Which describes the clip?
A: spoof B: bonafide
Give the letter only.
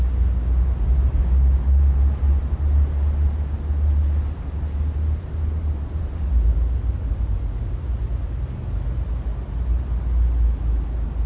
B